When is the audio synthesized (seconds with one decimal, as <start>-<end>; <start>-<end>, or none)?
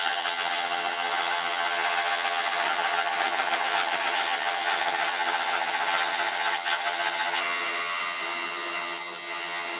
0.0-9.8